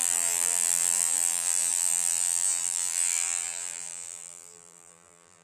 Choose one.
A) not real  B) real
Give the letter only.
A